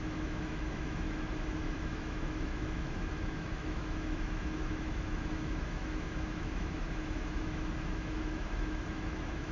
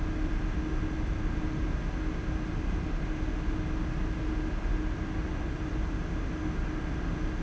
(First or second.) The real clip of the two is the second